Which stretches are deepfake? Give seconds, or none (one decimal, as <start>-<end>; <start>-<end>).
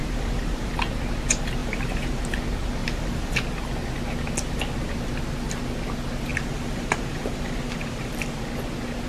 0.0-0.7; 1.6-2.2; 2.8-3.3; 6.3-8.4